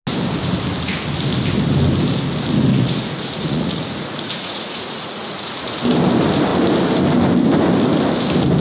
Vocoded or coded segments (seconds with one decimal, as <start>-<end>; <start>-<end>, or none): 2.7-5.8